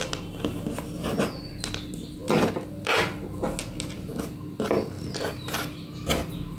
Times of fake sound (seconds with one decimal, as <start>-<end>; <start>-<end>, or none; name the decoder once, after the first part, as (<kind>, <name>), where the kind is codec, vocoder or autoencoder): none